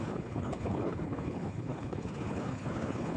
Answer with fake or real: fake